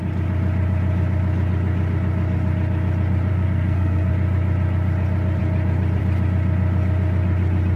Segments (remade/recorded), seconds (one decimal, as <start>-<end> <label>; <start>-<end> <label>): 0.0-3.3 recorded; 3.3-4.1 remade; 4.1-7.8 recorded